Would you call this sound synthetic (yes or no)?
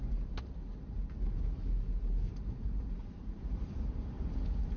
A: no